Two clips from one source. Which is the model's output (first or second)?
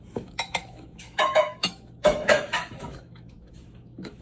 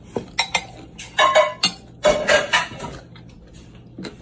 first